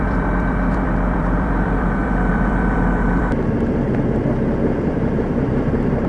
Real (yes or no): no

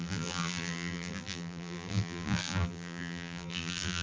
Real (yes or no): no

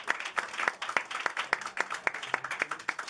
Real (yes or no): yes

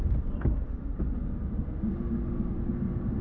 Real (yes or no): yes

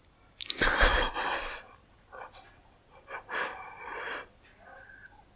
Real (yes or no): no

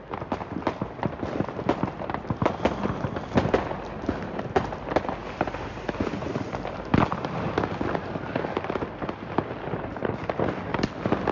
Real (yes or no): yes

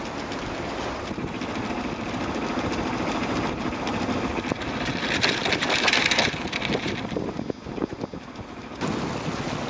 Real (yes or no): yes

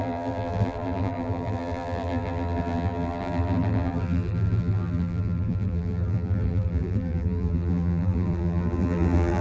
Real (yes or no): no